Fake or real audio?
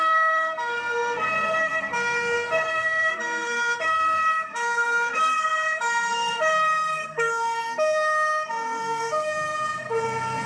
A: fake